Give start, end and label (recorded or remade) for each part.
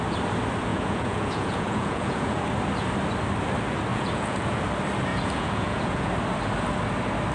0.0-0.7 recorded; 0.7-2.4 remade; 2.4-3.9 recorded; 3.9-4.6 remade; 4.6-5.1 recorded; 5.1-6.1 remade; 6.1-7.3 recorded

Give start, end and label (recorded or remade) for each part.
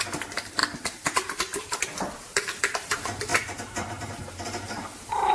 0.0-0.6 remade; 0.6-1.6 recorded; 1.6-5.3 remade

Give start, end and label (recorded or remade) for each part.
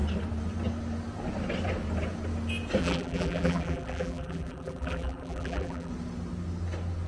0.0-2.8 recorded; 2.8-5.9 remade; 5.9-7.1 recorded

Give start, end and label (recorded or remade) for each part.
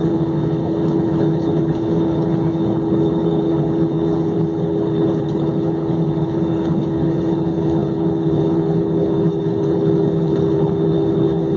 0.0-11.6 remade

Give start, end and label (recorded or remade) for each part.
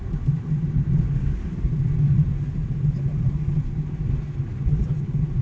0.0-5.4 recorded